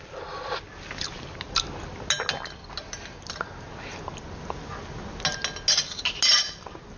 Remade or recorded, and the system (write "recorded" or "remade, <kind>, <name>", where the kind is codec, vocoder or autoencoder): recorded